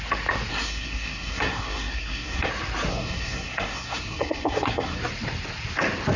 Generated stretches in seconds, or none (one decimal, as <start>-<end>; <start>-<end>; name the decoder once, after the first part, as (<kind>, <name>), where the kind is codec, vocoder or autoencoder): 0.5-2.5 (codec, SNAC); 2.9-5.0